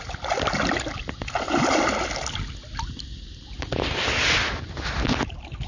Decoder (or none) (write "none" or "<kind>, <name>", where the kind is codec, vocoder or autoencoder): none